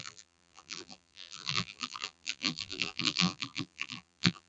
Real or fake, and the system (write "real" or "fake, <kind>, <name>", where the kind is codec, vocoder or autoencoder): fake, vocoder, BigVGAN v2